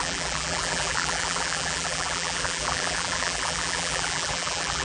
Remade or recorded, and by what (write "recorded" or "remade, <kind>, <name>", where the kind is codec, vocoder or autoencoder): remade, vocoder, BigVGAN v2